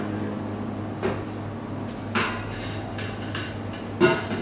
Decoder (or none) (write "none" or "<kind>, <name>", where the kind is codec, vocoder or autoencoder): none